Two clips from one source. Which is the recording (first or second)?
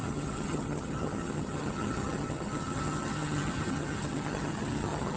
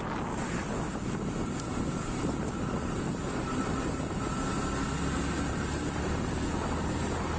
second